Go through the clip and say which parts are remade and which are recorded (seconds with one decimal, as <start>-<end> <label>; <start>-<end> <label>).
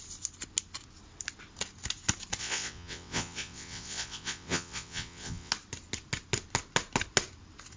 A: 0.0-2.4 recorded; 2.4-5.5 remade; 5.5-7.8 recorded